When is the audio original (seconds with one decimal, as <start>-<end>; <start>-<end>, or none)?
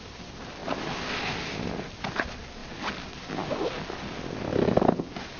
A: 0.0-5.4